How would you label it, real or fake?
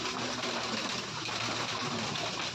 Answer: real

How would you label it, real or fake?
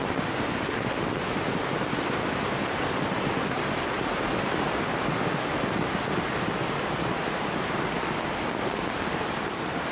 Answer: real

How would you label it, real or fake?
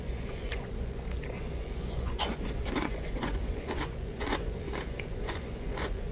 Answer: fake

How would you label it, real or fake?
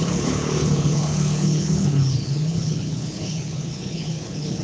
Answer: fake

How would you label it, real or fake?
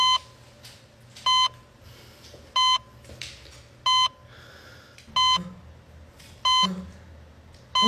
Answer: real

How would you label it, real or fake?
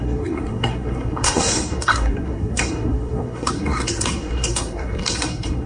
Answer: fake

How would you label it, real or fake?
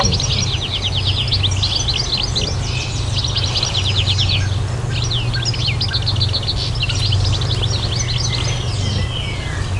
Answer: real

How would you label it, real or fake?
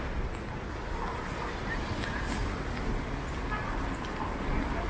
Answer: real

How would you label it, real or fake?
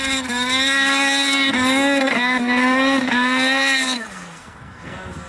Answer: fake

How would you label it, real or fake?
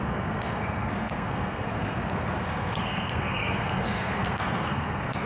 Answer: fake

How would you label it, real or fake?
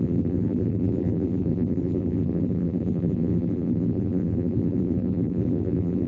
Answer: fake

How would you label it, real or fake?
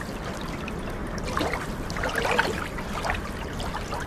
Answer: real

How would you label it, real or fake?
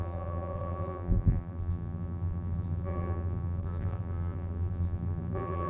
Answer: fake